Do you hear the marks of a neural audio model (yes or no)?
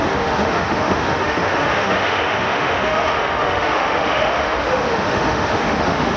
yes